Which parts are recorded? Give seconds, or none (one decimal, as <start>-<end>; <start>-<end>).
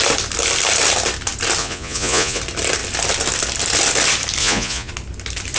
0.0-1.6; 2.4-4.4; 4.9-5.6